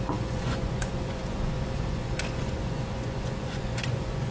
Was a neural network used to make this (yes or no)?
yes